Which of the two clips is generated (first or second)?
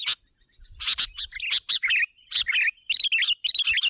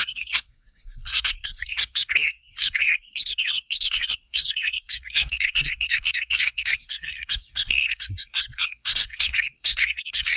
second